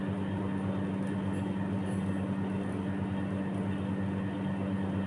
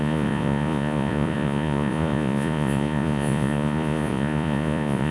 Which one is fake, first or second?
second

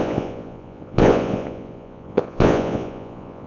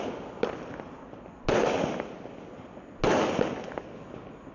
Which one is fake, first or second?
first